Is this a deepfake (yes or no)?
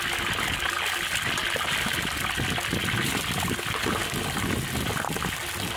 no